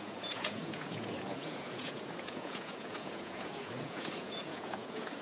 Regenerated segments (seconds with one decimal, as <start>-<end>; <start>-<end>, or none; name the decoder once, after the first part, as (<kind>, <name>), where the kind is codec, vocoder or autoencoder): 0.0-5.2 (vocoder, Vocos)